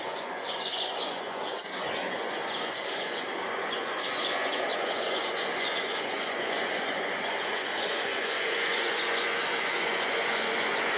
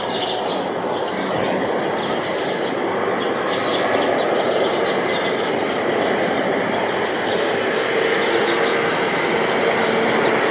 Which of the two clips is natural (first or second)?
second